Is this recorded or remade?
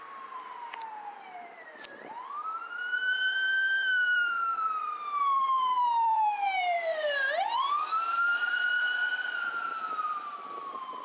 remade